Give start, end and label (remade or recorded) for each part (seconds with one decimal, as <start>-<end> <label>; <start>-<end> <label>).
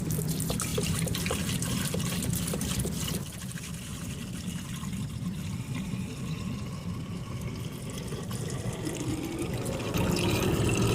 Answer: 0.0-0.7 recorded; 0.7-5.2 remade; 5.2-10.9 recorded